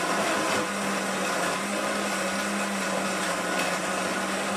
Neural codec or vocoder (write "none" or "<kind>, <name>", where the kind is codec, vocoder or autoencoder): none